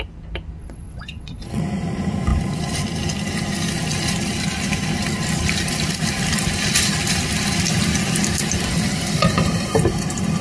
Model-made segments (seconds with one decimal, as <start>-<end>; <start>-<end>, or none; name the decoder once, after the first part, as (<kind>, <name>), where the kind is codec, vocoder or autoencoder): 0.6-1.6 (vocoder, WaveNeXt)